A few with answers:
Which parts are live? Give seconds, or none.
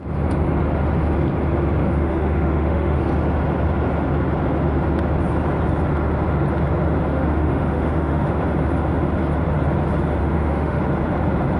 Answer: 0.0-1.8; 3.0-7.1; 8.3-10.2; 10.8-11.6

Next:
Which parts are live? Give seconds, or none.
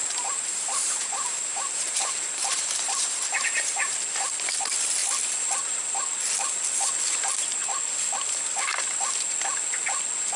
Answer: 4.3-10.4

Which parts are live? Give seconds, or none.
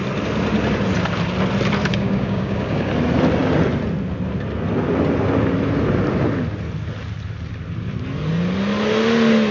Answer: 0.0-1.9; 2.9-9.5